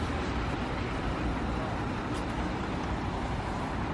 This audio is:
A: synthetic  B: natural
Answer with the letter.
B